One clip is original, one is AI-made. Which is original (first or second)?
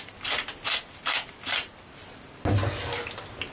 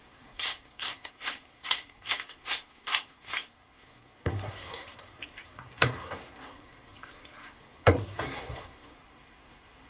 first